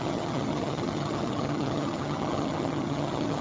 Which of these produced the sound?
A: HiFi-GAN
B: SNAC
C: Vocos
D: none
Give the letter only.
A